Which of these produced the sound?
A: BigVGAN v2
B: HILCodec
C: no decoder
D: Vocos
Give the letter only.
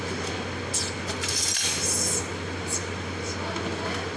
C